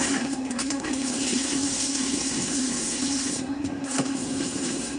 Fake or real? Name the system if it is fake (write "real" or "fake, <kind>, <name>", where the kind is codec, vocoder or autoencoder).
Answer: fake, codec, SNAC